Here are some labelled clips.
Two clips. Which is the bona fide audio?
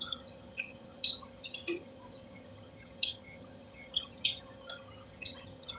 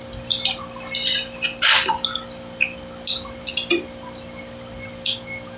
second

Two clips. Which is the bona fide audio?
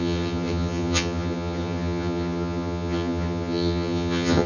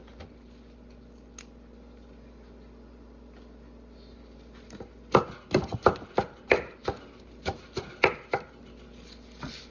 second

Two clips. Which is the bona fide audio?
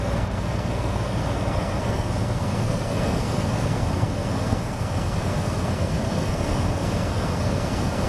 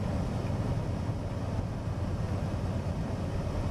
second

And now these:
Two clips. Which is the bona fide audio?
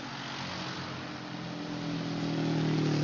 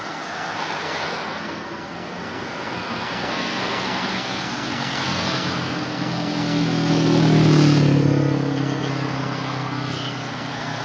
first